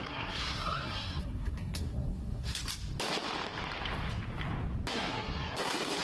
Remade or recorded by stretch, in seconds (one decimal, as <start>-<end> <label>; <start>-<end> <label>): 0.0-2.6 remade; 2.6-4.9 recorded; 4.9-6.0 remade